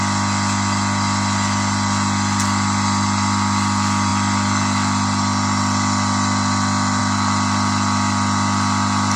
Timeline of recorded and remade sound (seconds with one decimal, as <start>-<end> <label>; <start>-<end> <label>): 0.0-9.2 recorded